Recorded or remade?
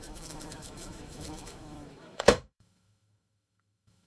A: remade